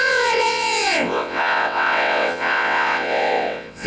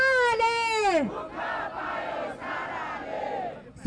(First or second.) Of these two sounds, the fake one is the first